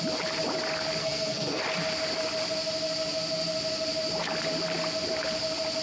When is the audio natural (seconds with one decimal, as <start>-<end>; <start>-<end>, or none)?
0.0-1.0; 1.6-5.8